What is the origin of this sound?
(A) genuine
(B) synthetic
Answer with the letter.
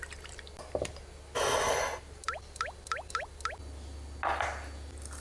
A